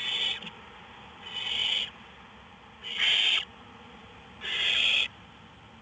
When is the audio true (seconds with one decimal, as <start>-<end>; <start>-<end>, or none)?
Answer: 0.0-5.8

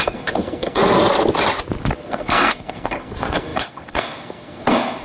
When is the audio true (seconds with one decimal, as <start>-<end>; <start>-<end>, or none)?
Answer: 0.8-2.0

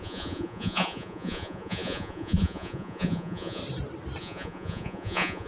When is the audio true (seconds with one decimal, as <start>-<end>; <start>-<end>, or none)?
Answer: 3.6-4.2